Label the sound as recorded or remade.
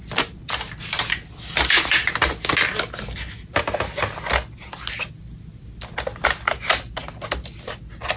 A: recorded